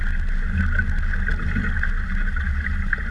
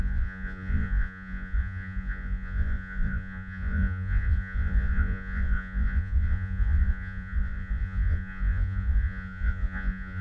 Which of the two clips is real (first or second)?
first